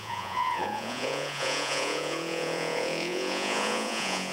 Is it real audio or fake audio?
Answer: fake